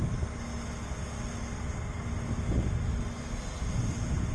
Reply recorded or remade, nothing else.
recorded